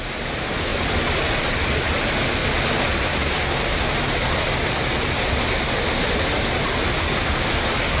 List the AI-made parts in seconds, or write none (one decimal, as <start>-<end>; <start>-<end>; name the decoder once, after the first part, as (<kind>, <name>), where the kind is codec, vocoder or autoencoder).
none